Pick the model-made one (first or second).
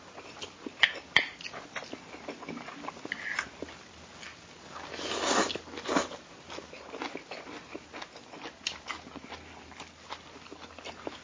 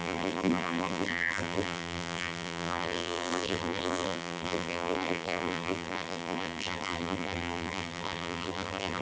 second